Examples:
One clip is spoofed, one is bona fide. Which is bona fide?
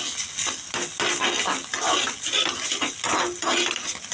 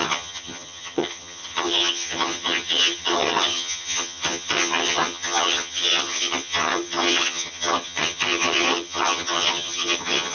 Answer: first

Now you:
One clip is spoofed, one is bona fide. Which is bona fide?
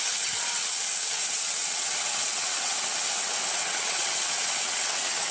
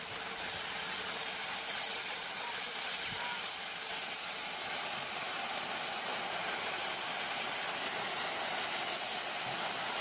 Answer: second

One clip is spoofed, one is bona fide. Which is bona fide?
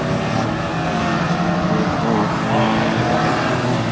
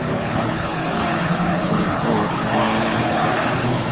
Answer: first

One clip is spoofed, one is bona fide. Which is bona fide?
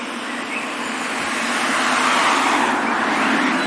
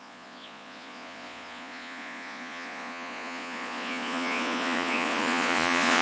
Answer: first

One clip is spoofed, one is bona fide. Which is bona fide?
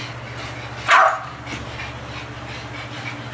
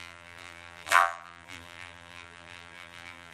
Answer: first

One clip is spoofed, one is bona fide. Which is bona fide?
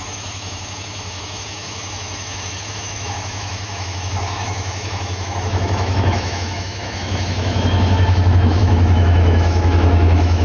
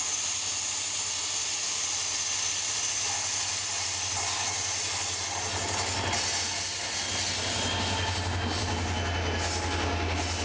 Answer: second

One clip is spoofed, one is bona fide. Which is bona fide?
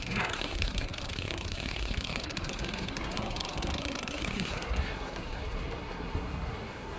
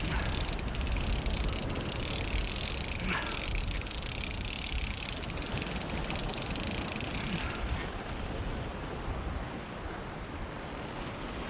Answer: second